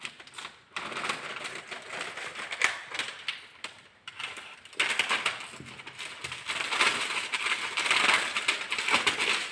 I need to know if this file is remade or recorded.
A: recorded